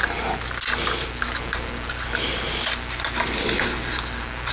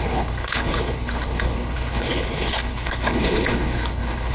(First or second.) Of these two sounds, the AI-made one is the second